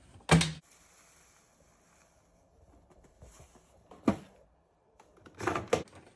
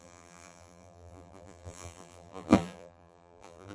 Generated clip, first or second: second